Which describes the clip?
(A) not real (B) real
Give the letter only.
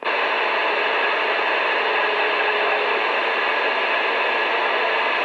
B